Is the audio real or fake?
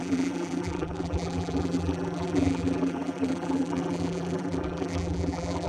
fake